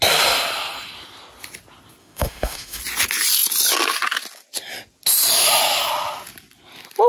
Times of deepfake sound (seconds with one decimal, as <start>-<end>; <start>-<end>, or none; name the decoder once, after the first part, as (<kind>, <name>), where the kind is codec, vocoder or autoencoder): 2.0-2.8 (autoencoder, DAC-VAE)